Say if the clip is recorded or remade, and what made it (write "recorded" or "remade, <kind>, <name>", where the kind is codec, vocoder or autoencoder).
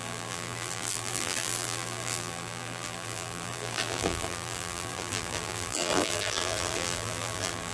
remade, vocoder, BigVGAN v2